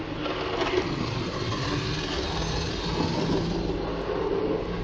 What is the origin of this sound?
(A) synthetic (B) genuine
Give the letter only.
B